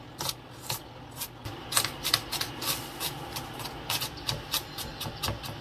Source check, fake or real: real